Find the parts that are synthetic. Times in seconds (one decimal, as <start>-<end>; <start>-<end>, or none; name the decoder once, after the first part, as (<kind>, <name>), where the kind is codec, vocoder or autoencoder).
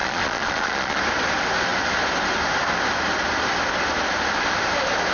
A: 0.0-1.0 (vocoder, Vocos)